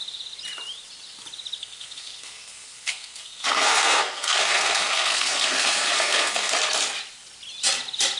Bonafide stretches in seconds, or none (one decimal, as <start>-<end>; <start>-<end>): 0.0-1.6; 6.5-8.2